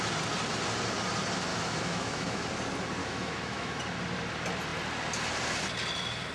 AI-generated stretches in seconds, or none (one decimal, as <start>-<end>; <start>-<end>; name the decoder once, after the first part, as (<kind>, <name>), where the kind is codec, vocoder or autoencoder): 1.5-2.5 (autoencoder, DAC-VAE); 3.0-3.8